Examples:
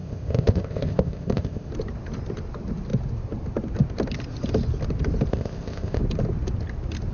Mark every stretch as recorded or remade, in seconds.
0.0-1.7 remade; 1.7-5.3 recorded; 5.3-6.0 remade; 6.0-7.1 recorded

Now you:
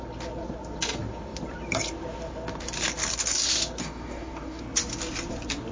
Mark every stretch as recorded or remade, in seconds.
0.0-3.8 recorded; 3.8-4.6 remade; 4.6-5.7 recorded

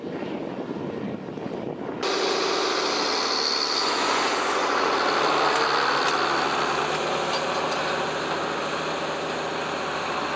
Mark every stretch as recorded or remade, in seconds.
0.0-3.8 recorded; 3.8-4.9 remade; 4.9-10.4 recorded

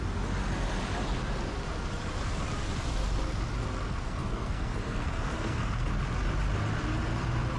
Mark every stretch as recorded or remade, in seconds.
0.0-3.6 recorded; 3.6-6.0 remade; 6.0-7.6 recorded

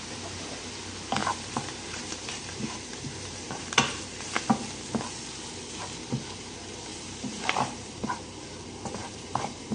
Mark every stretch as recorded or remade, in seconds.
0.0-1.2 recorded; 1.2-4.0 remade; 4.0-6.9 recorded; 6.9-8.4 remade; 8.4-9.0 recorded; 9.0-9.7 remade

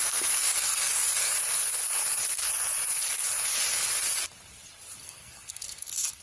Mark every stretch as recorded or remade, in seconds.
0.0-1.3 remade; 1.3-5.0 recorded; 5.0-6.2 remade

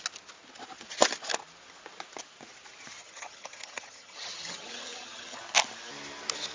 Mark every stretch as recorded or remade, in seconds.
0.0-3.0 recorded; 3.0-5.4 remade; 5.4-6.5 recorded

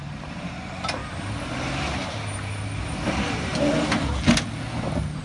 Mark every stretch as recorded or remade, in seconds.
0.0-1.0 remade; 1.0-2.8 recorded; 2.8-3.5 remade; 3.5-5.2 recorded